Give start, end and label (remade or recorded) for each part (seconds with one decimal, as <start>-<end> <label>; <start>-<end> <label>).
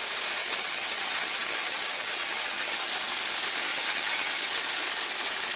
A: 0.0-0.4 recorded; 0.4-2.9 remade; 2.9-3.7 recorded; 3.7-4.3 remade; 4.3-5.6 recorded